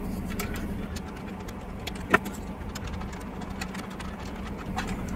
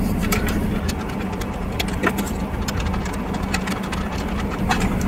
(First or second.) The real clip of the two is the first